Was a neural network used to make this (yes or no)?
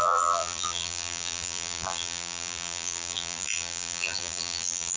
yes